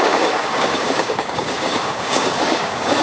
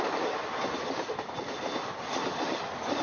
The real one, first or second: second